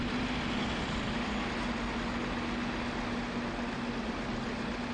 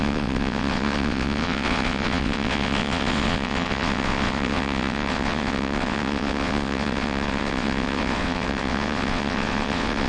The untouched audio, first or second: first